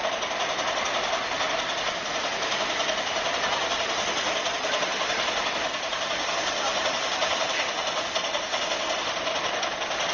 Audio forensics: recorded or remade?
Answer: recorded